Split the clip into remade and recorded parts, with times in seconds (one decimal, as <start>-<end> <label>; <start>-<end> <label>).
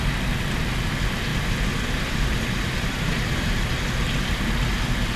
0.0-1.3 recorded; 1.3-4.4 remade; 4.4-5.2 recorded